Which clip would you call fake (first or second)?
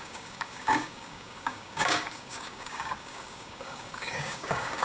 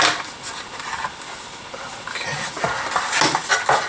first